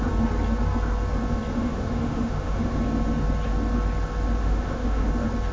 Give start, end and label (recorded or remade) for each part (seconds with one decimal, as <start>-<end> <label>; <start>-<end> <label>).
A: 0.0-1.5 recorded; 1.5-2.8 remade; 2.8-4.4 recorded; 4.4-5.1 remade; 5.1-5.5 recorded